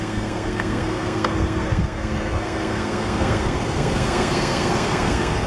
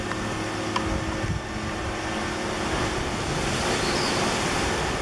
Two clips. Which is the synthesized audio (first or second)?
first